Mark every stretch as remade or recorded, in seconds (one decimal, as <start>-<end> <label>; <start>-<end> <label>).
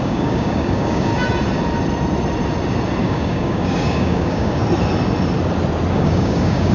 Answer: 0.0-1.1 remade; 1.1-3.0 recorded; 3.0-4.6 remade; 4.6-5.9 recorded; 5.9-6.7 remade